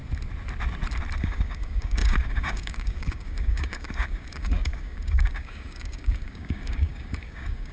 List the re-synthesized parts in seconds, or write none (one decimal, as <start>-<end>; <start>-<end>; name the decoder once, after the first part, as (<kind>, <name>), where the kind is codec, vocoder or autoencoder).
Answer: 1.2-7.7 (codec, DAC)